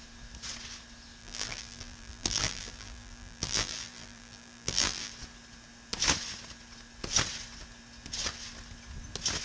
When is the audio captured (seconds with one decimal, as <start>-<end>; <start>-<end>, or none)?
0.0-1.2; 5.1-9.4